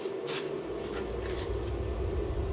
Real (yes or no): yes